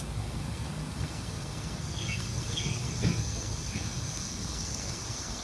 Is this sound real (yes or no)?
no